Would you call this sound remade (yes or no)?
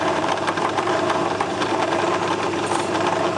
yes